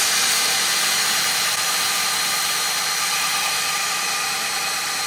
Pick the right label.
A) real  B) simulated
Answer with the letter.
B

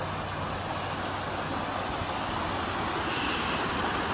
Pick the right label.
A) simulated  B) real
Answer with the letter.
B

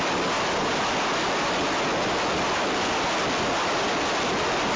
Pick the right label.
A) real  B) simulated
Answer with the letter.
B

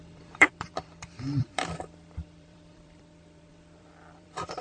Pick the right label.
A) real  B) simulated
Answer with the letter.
B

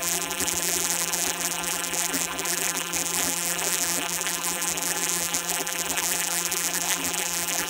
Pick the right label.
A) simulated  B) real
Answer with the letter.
A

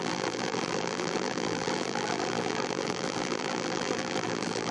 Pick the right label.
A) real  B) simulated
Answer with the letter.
B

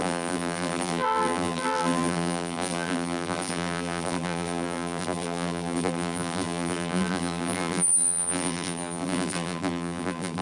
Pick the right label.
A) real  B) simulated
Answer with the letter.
B